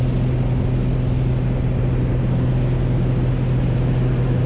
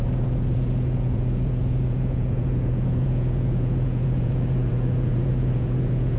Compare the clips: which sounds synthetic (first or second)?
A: second